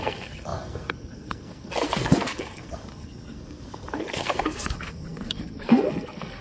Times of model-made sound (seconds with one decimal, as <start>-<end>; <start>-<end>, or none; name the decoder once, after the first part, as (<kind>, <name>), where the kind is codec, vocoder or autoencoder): 0.0-6.4 (codec, SNAC)